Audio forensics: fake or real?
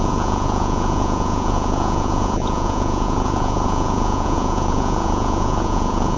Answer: fake